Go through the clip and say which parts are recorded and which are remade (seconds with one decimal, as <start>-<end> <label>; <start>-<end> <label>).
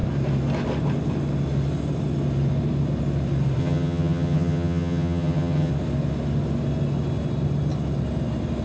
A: 0.0-3.6 recorded; 3.6-5.7 remade; 5.7-8.6 recorded